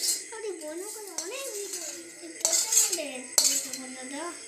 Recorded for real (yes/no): yes